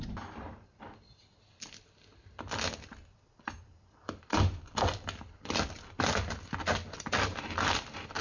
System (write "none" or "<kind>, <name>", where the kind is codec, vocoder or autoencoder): none